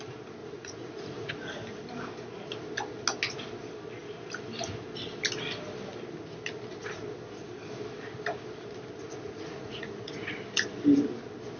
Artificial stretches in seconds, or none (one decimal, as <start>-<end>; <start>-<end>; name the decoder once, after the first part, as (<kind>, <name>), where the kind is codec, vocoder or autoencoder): 0.4-1.3 (vocoder, Vocos); 9.0-10.4